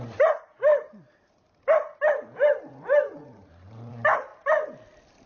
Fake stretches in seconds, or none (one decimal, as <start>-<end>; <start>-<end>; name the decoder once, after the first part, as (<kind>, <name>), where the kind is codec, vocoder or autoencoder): 0.7-3.9 (vocoder, BigVGAN v2)